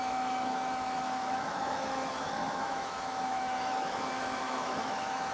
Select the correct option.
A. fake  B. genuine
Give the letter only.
A